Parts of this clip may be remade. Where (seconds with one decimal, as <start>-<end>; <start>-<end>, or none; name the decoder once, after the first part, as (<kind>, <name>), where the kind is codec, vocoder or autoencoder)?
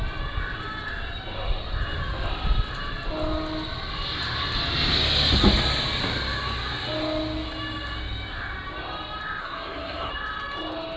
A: 9.4-10.1 (codec, SNAC)